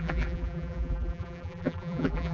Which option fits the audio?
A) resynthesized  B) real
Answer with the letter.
A